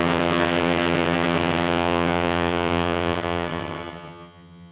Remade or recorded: remade